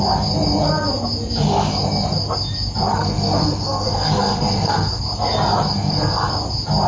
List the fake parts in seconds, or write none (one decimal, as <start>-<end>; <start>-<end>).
2.9-5.0; 5.7-6.3